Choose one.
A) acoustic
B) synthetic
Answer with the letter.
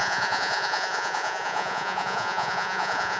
B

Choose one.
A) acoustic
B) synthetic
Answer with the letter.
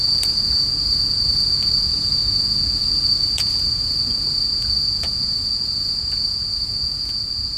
B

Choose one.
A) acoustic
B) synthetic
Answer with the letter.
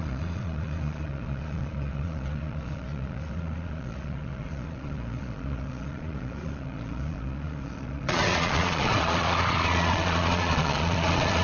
B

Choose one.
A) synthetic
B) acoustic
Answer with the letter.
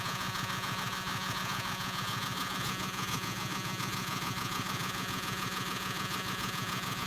A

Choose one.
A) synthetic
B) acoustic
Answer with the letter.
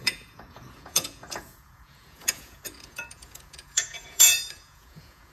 A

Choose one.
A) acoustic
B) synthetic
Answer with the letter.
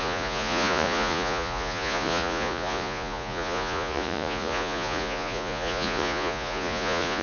B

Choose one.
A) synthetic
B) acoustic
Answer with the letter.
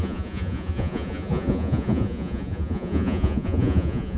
A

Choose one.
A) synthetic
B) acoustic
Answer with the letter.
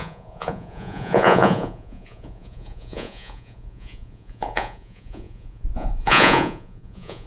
A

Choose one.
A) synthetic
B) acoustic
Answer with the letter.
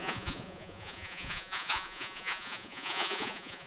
A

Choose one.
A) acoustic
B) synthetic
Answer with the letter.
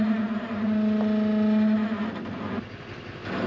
A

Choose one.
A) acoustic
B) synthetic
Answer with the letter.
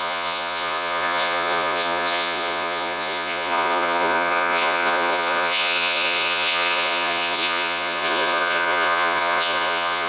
B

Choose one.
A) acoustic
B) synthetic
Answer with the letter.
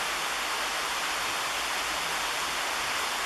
A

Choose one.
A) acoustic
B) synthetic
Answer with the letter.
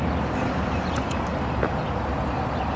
A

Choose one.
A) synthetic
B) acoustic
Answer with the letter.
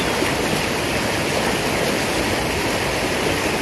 B